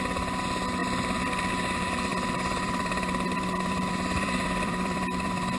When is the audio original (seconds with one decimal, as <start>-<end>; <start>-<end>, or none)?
0.0-2.1